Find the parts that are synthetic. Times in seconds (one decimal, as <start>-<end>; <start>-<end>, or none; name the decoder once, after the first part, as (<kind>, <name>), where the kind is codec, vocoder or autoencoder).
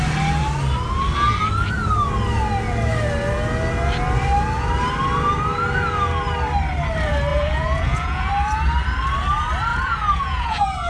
7.3-8.3 (vocoder, Vocos); 9.7-10.9